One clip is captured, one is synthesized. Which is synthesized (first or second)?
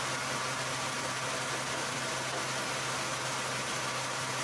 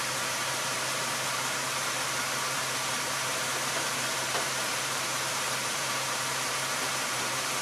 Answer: second